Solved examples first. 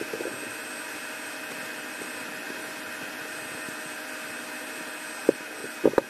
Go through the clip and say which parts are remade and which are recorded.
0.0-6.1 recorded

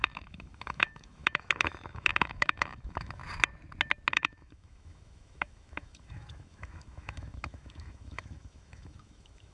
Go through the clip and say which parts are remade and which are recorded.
0.0-3.2 remade; 3.2-4.1 recorded; 4.1-9.5 remade